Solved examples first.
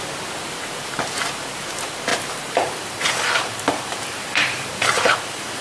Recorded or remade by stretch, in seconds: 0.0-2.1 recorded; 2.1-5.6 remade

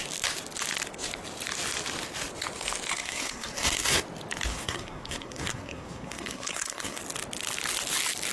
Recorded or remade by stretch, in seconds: 0.0-2.9 recorded; 2.9-4.0 remade; 4.0-4.5 recorded; 4.5-7.0 remade; 7.0-8.3 recorded